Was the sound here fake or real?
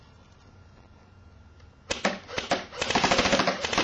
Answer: real